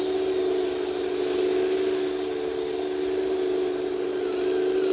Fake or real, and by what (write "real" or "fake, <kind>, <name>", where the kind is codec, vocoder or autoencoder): real